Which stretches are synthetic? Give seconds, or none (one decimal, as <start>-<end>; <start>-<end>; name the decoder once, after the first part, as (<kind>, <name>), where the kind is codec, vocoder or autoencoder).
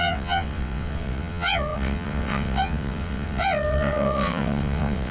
0.0-5.1 (vocoder, WaveNeXt)